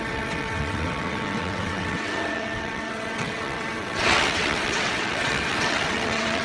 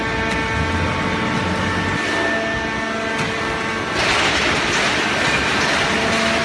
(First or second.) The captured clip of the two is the second